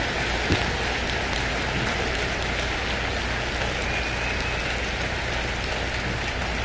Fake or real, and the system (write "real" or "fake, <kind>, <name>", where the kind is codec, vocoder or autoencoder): real